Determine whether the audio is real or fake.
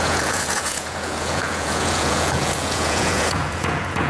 fake